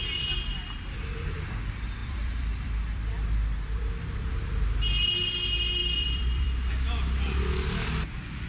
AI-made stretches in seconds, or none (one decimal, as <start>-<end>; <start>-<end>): 2.0-3.9; 5.8-6.7